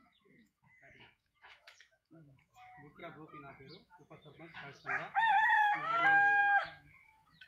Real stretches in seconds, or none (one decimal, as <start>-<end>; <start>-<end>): 3.0-3.7